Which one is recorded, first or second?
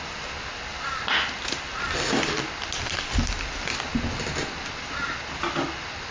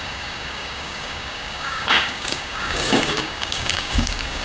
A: first